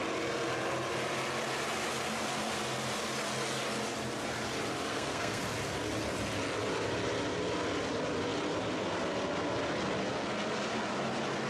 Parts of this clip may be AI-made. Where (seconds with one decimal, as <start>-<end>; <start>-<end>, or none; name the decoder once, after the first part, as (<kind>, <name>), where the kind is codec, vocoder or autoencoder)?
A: 4.9-5.4 (codec, SNAC)